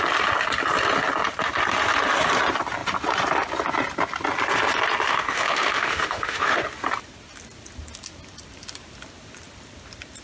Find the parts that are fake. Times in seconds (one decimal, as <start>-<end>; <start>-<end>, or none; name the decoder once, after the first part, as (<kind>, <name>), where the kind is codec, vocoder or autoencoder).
5.1-6.6 (autoencoder, DAC-VAE)